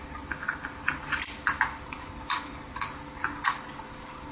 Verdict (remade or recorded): recorded